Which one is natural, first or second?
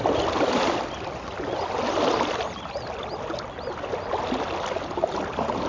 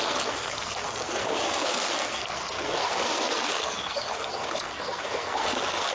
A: first